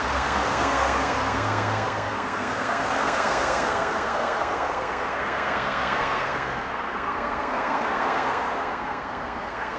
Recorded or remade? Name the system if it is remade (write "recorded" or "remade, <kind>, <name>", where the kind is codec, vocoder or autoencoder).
remade, codec, SNAC